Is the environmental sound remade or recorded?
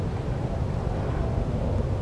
recorded